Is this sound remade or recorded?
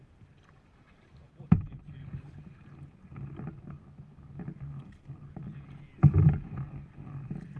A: recorded